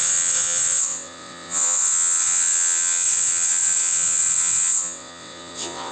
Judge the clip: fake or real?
fake